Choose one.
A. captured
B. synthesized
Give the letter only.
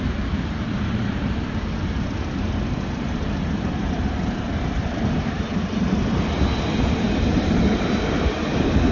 B